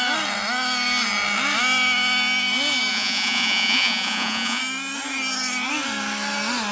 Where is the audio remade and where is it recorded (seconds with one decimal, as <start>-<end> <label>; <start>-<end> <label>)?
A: 0.0-2.9 recorded; 2.9-4.6 remade; 4.6-6.7 recorded